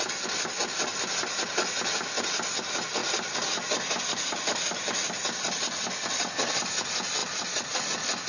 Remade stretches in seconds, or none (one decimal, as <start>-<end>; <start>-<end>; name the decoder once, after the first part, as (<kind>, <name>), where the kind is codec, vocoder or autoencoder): none